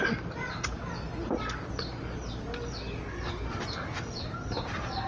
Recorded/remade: recorded